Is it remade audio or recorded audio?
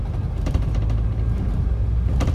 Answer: recorded